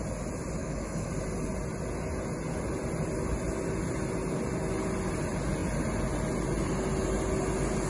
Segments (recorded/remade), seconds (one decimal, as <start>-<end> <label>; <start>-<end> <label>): 0.0-0.6 recorded; 0.6-1.1 remade; 1.1-7.9 recorded